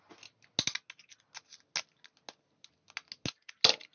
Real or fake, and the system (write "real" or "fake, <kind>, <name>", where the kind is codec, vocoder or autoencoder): real